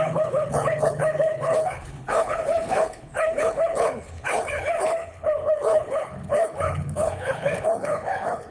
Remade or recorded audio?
remade